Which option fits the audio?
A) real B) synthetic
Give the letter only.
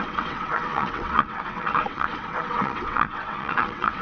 B